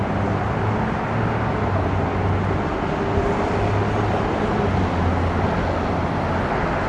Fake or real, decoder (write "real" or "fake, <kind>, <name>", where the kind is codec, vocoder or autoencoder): real